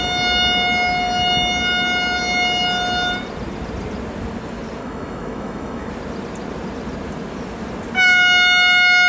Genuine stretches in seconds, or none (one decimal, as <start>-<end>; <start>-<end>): 0.0-4.8; 5.9-9.1